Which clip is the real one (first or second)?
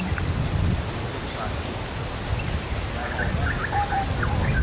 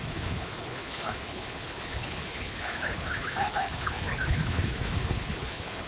first